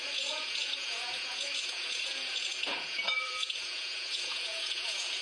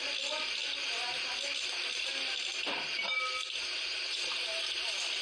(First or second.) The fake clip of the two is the first